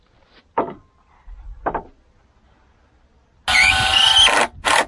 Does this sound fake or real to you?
real